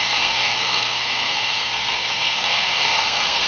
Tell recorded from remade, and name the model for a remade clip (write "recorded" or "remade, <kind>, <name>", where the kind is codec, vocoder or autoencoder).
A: remade, codec, SNAC